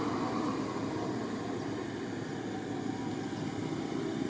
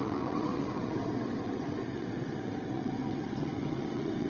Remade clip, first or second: second